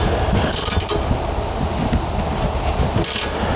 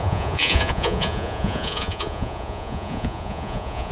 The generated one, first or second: second